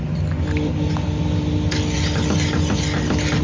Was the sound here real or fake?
real